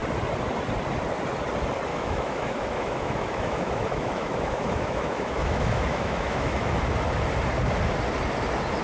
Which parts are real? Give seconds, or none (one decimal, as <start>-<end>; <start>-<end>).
0.0-1.9; 6.8-8.8